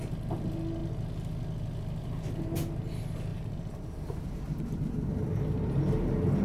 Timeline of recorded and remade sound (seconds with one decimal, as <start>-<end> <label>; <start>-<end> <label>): 0.0-3.3 recorded; 3.3-4.6 remade; 4.6-6.4 recorded